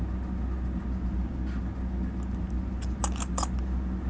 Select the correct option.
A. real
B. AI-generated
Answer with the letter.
A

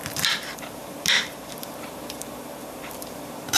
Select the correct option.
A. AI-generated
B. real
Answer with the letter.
A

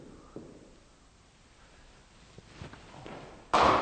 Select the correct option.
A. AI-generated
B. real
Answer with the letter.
B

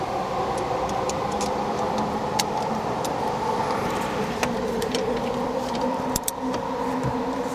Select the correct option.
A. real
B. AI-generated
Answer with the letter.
B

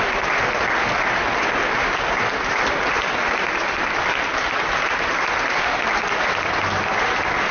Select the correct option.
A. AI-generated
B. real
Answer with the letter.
B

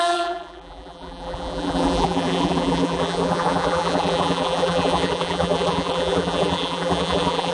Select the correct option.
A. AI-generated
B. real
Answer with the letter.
A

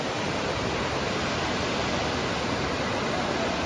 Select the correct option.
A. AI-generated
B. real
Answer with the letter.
B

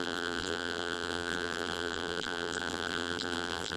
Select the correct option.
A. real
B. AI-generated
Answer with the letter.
B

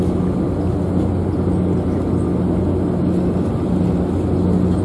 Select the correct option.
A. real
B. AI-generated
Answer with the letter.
A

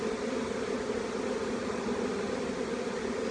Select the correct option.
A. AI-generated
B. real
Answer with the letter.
B